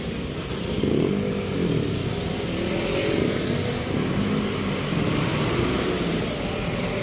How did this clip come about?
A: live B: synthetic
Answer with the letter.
A